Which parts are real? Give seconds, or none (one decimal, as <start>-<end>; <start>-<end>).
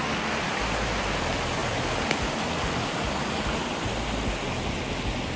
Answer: 0.0-5.4